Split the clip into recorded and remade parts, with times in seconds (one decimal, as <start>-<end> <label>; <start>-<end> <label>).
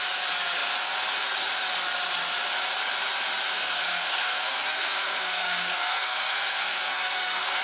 0.0-3.5 recorded; 3.5-7.6 remade